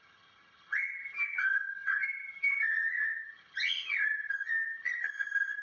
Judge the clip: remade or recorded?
remade